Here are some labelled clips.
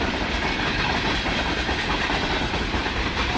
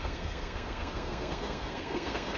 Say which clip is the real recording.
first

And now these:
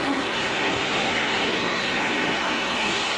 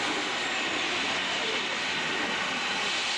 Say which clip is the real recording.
second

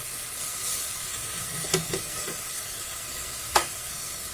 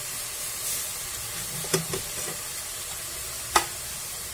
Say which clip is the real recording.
second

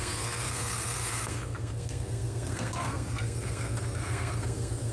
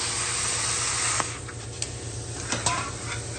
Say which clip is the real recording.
second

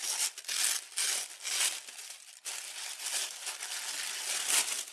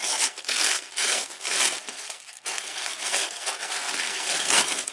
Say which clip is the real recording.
first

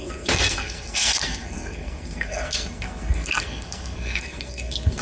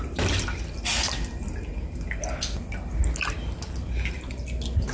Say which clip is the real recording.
second